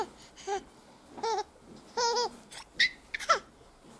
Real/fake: real